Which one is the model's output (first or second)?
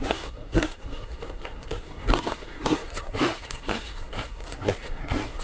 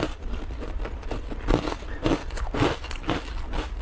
first